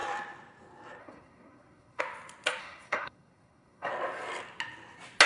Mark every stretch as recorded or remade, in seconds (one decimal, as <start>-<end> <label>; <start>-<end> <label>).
0.0-1.0 recorded; 1.0-2.0 remade; 2.0-2.6 recorded; 2.6-3.9 remade; 3.9-5.3 recorded